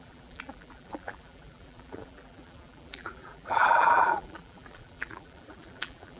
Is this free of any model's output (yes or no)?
no